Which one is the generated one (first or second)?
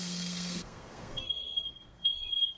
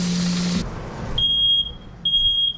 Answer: first